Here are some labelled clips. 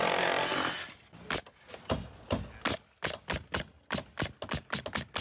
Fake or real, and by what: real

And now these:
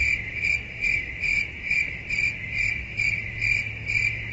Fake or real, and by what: real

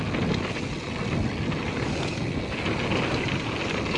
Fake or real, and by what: real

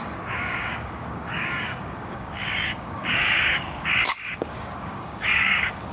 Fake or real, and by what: fake, codec, DAC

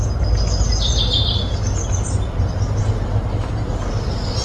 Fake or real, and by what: real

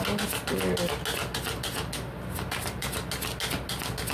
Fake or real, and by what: real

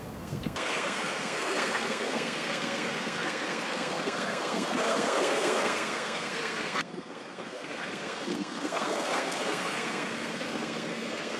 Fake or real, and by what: fake, codec, SNAC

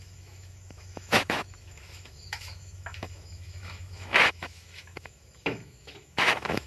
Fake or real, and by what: fake, autoencoder, DAC-VAE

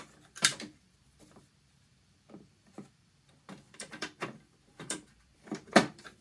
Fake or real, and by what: fake, vocoder, BigVGAN v2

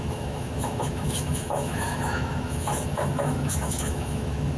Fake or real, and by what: fake, autoencoder, DAC-VAE